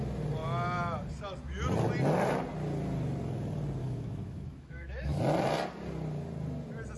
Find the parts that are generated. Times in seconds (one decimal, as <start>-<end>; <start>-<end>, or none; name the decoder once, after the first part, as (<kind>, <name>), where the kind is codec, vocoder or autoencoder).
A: 3.8-5.2 (autoencoder, DAC-VAE)